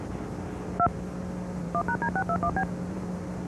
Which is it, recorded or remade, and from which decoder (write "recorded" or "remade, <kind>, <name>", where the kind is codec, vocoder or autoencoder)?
recorded